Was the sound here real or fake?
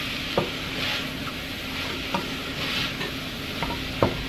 real